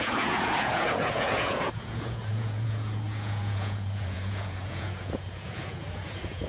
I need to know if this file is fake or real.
fake